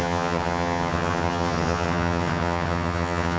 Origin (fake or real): fake